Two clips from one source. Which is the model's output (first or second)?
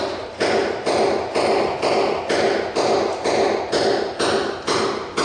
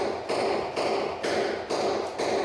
second